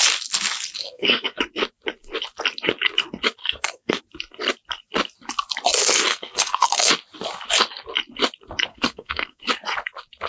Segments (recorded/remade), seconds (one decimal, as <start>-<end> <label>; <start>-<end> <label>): 0.0-0.8 recorded; 0.8-1.4 remade; 1.4-3.4 recorded; 3.4-4.0 remade; 4.0-6.1 recorded; 6.1-6.9 remade; 6.9-8.7 recorded; 8.7-9.4 remade; 9.4-10.3 recorded